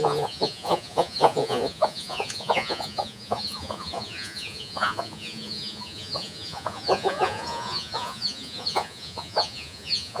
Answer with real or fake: fake